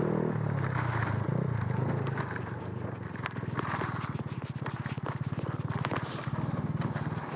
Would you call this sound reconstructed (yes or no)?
no